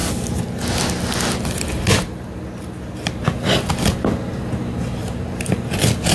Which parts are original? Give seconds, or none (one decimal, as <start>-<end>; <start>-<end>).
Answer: 0.0-5.0; 5.5-6.1